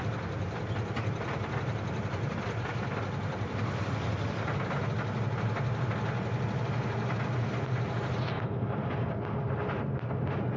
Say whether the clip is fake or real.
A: real